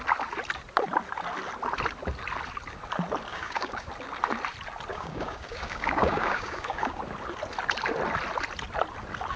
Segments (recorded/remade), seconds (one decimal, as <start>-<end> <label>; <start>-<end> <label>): 0.0-3.3 recorded; 3.3-3.9 remade; 3.9-4.9 recorded; 4.9-7.0 remade; 7.0-9.4 recorded